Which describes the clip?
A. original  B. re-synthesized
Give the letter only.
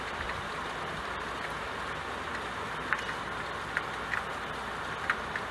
A